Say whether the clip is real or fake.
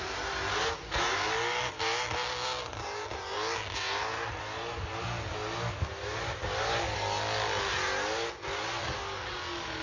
real